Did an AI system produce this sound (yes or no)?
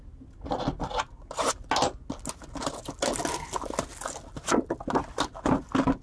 no